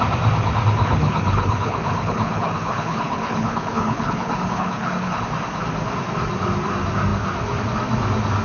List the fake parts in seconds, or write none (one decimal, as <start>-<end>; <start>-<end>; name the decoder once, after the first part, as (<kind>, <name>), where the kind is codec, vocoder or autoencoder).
0.8-5.2 (codec, HILCodec)